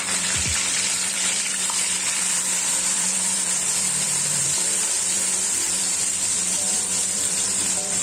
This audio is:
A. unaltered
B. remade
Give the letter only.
B